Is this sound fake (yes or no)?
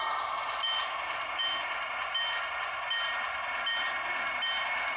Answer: no